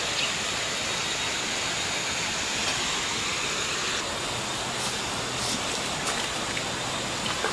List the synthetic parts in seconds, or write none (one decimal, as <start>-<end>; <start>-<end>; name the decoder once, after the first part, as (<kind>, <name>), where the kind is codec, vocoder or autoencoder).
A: none